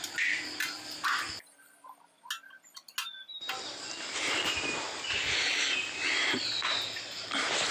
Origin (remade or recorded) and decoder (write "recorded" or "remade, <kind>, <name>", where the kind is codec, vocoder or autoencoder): recorded